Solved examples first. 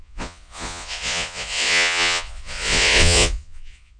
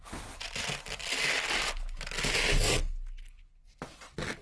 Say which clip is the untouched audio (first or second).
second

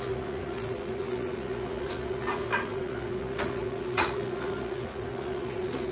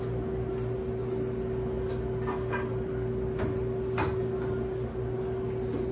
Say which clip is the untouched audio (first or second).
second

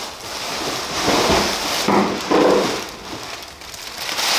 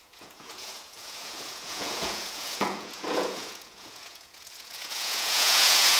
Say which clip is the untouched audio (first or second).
first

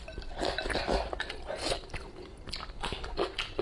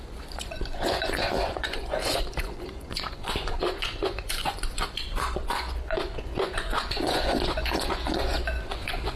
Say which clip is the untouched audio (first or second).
first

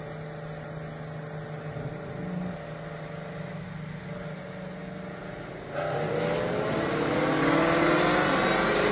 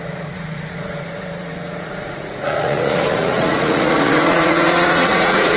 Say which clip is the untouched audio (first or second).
first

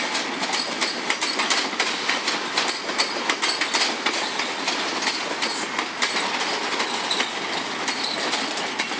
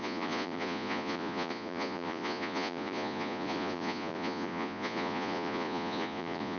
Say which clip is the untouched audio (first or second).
first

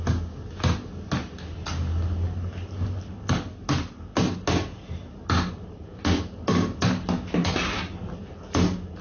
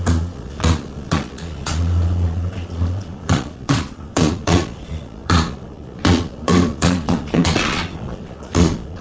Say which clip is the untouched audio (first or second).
first